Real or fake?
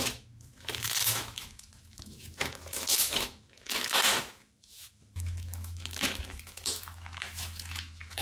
fake